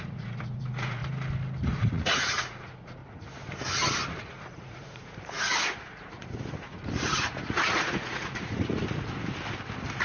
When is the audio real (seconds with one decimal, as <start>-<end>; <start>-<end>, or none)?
1.0-1.8; 3.0-4.2; 8.8-10.0